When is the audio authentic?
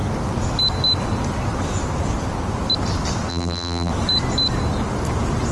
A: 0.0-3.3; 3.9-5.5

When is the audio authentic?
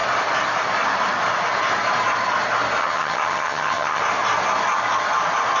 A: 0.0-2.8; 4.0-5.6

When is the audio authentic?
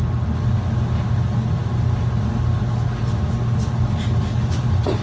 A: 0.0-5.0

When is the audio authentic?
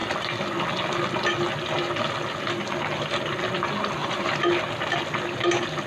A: 0.0-4.0; 4.5-5.9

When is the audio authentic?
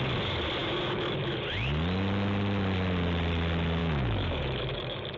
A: 0.0-0.6; 1.4-3.8